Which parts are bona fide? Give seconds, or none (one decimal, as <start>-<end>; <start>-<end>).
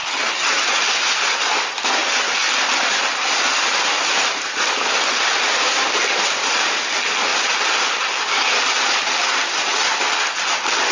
0.8-10.9